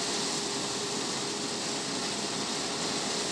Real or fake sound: real